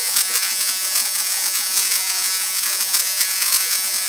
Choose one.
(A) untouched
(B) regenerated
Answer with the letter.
B